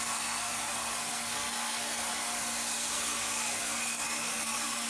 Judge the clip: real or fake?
fake